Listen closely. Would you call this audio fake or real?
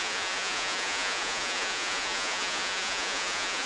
fake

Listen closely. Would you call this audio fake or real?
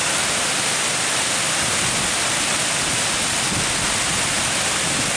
real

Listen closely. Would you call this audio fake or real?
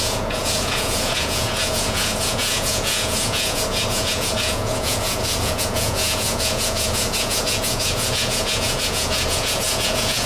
fake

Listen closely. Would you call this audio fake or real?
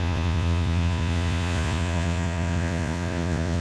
fake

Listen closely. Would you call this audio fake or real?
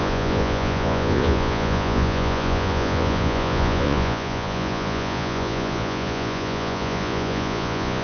fake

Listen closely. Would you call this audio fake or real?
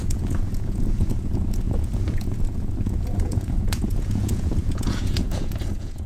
fake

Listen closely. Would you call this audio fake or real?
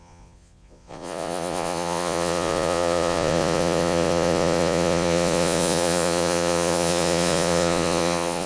fake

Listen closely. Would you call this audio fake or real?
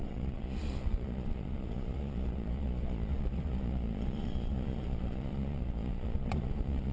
fake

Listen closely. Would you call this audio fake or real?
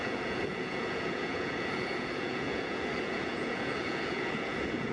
fake